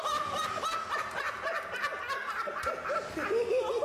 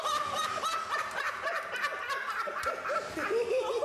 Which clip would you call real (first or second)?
first